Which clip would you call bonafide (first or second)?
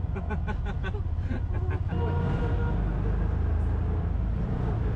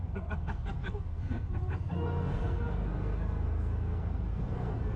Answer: first